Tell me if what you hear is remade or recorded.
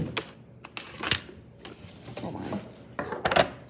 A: recorded